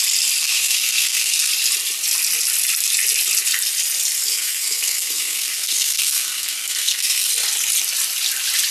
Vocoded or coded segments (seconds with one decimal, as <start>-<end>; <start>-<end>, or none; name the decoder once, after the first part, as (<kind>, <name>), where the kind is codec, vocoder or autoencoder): 0.4-1.5 (codec, SNAC); 4.3-7.3